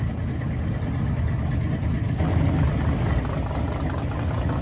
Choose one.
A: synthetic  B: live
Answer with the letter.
B